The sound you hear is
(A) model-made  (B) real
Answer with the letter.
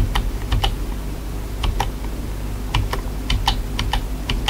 B